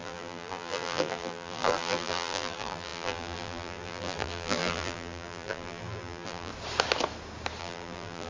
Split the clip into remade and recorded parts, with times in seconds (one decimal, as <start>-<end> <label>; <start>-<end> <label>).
0.0-6.5 remade; 6.5-7.6 recorded; 7.6-8.3 remade